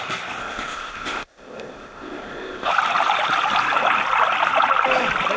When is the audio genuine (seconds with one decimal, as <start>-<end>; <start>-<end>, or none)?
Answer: 0.0-0.4; 2.7-5.4